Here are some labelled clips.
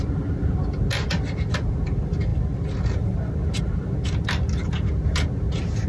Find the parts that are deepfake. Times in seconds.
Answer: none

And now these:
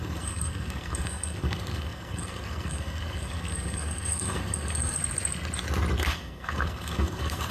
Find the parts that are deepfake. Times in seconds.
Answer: 0.0-5.0 (codec, SNAC); 6.0-7.5

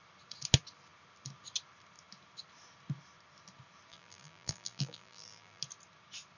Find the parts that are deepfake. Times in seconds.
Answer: 3.9-5.6 (vocoder, BigVGAN v2)

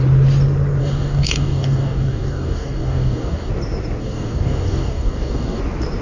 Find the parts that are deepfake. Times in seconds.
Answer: 0.8-3.5 (codec, DAC); 4.0-5.6

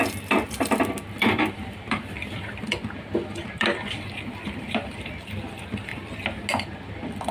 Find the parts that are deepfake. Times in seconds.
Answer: 0.0-5.9 (vocoder, BigVGAN v2); 6.6-7.3

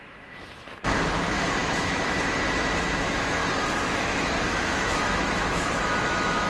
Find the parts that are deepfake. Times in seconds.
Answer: 0.0-3.4 (autoencoder, DAC-VAE); 3.9-6.5